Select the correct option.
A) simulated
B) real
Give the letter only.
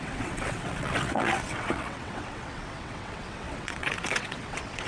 A